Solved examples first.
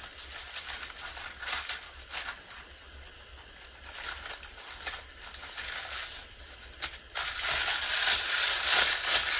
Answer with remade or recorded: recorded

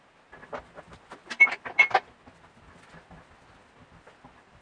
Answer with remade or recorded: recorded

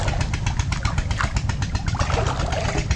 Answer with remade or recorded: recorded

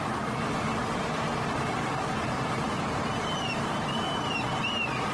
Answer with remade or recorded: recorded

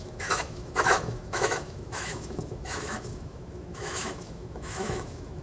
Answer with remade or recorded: remade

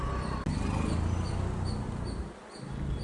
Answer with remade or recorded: recorded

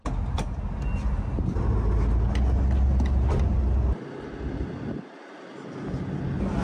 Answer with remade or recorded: recorded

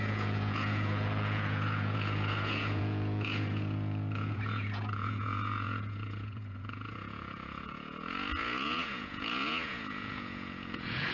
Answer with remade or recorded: remade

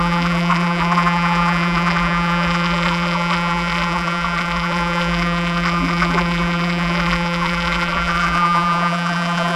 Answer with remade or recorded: remade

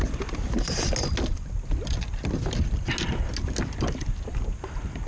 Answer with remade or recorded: recorded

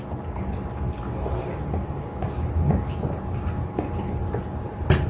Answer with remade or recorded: recorded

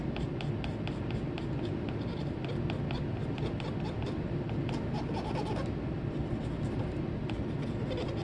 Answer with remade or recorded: recorded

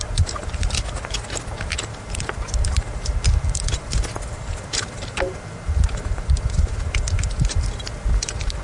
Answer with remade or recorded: recorded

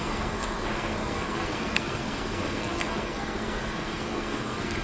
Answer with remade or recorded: remade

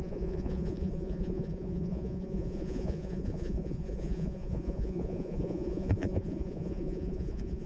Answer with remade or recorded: remade